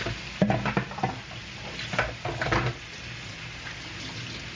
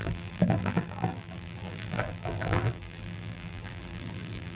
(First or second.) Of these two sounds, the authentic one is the first